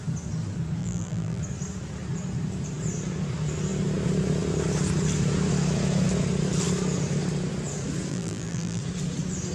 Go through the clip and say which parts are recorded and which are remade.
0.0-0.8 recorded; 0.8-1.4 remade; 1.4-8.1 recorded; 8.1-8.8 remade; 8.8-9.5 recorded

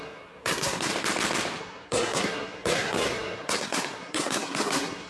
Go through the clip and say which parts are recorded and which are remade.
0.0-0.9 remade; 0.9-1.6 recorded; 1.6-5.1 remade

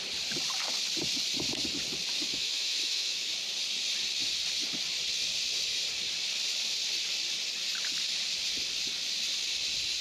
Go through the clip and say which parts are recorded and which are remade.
0.0-2.3 recorded; 2.3-3.3 remade; 3.3-10.0 recorded

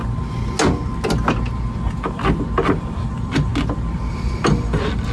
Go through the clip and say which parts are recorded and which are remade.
0.0-3.1 recorded; 3.1-3.5 remade; 3.5-4.1 recorded; 4.1-5.1 remade

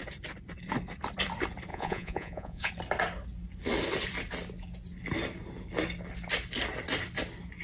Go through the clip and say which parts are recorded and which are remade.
0.0-1.7 recorded; 1.7-2.7 remade; 2.7-7.6 recorded